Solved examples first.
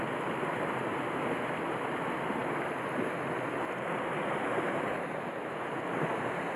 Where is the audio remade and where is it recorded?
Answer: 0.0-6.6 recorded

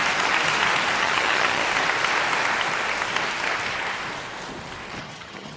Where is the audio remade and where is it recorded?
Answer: 0.0-1.0 recorded; 1.0-1.6 remade; 1.6-5.0 recorded; 5.0-5.6 remade

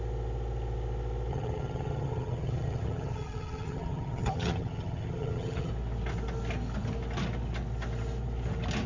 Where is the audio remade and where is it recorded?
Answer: 0.0-1.3 recorded; 1.3-5.7 remade; 5.7-8.9 recorded

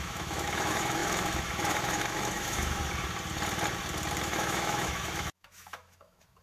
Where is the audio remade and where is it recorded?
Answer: 0.0-2.8 remade; 2.8-4.2 recorded; 4.2-6.4 remade

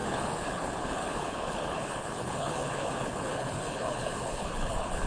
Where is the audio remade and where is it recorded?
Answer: 0.0-5.1 remade

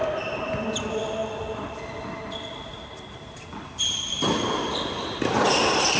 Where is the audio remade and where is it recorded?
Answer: 0.0-6.0 recorded